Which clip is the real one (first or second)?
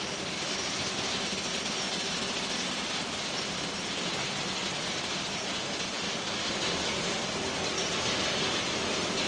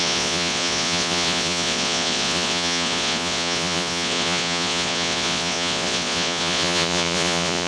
first